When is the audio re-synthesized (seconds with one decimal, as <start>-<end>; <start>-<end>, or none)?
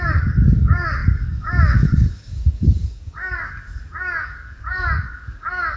0.0-5.8